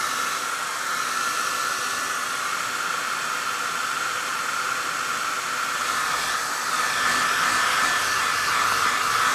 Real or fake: real